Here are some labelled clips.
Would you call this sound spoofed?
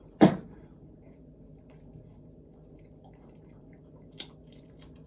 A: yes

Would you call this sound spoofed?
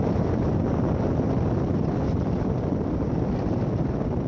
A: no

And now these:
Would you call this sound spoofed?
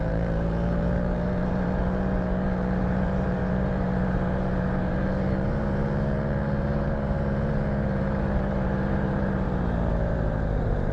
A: yes